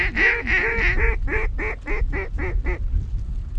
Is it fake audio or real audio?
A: real